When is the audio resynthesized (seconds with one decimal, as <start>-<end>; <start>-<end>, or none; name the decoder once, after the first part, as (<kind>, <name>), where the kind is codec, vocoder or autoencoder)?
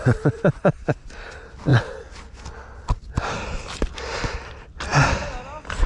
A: none